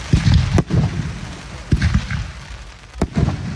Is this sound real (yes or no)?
yes